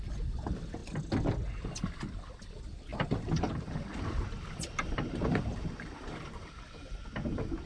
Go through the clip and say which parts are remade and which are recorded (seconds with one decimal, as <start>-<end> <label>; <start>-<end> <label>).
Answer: 0.0-2.9 recorded; 2.9-6.5 remade; 6.5-7.7 recorded